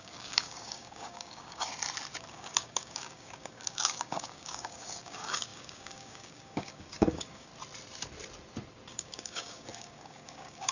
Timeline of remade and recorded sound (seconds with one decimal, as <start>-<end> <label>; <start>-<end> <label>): 0.0-1.7 remade; 1.7-2.2 recorded; 2.2-7.5 remade; 7.5-8.9 recorded; 8.9-10.7 remade

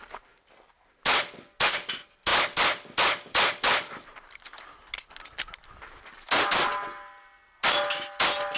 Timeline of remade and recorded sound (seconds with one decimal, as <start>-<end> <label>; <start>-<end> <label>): 0.0-8.6 recorded

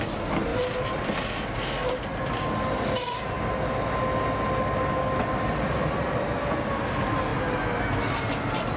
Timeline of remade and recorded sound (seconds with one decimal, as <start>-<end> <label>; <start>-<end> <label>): 0.0-8.8 recorded